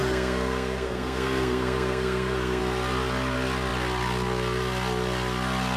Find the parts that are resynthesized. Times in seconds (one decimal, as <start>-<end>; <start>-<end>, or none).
0.0-2.6